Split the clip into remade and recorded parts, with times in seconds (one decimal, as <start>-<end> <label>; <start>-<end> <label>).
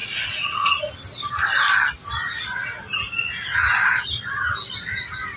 0.0-0.8 remade; 0.8-5.4 recorded